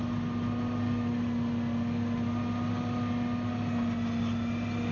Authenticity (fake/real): real